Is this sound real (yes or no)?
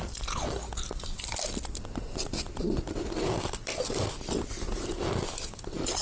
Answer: yes